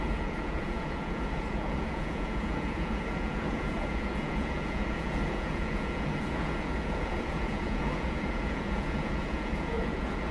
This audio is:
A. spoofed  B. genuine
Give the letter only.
A